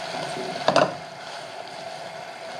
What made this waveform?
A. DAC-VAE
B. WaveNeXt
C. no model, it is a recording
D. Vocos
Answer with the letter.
C